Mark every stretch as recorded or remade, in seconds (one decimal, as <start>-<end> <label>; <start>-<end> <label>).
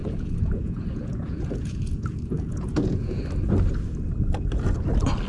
0.0-3.2 remade; 3.2-5.3 recorded